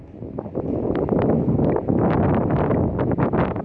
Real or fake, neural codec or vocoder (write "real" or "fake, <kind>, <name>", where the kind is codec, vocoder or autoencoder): real